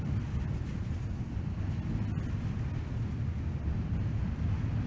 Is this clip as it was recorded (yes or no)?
yes